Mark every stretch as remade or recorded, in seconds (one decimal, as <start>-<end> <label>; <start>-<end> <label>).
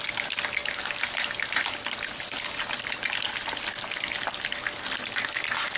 0.0-5.8 recorded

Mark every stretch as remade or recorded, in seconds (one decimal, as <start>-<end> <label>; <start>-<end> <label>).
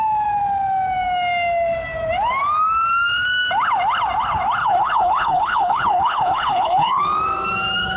0.0-4.6 recorded; 4.6-7.0 remade; 7.0-8.0 recorded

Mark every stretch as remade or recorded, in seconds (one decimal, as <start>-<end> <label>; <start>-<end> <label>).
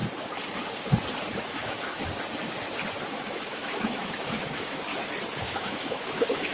0.0-1.3 recorded; 1.3-2.1 remade; 2.1-3.0 recorded; 3.0-4.9 remade; 4.9-5.4 recorded; 5.4-6.5 remade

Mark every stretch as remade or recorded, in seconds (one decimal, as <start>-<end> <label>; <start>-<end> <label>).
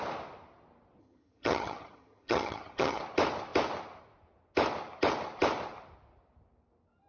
0.0-1.0 recorded; 1.0-3.0 remade; 3.0-7.1 recorded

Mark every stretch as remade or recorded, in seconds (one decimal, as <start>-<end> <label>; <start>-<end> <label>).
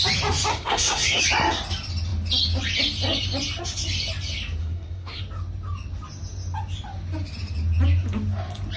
0.0-0.5 recorded; 0.5-1.2 remade; 1.2-4.6 recorded; 4.6-5.2 remade; 5.2-8.8 recorded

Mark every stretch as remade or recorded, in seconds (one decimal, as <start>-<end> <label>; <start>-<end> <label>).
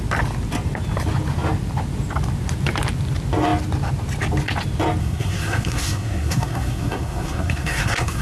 0.0-5.0 recorded; 5.0-8.2 remade